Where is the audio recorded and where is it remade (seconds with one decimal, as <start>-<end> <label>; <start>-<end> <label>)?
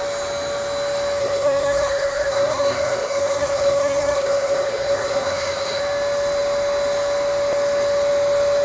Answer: 0.0-1.2 recorded; 1.2-5.8 remade; 5.8-8.6 recorded